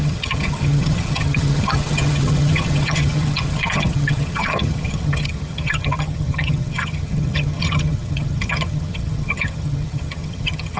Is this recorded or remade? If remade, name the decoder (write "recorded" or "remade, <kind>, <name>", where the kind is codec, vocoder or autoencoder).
remade, vocoder, HiFi-GAN